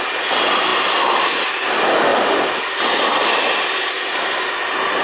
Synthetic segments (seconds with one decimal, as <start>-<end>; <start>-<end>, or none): none

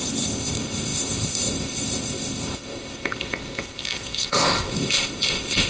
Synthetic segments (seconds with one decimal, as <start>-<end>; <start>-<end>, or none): 0.0-5.7

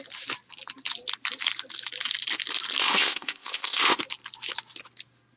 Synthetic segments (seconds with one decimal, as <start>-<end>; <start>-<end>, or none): 2.8-4.0

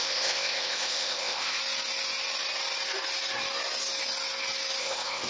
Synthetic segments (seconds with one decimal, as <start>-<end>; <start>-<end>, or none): 0.0-1.6; 4.8-5.3

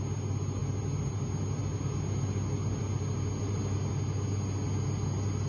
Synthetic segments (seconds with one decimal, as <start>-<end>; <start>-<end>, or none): none

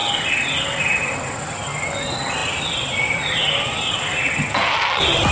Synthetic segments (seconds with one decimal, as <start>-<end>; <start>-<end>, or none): none